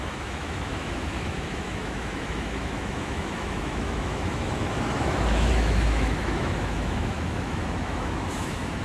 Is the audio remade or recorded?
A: remade